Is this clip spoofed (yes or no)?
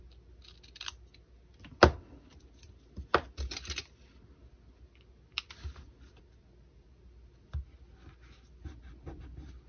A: no